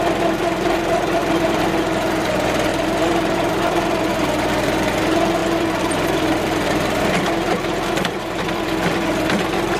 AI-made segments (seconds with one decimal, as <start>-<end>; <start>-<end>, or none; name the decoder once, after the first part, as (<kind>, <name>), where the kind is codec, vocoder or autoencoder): 0.0-4.1 (vocoder, BigVGAN v2); 5.0-9.8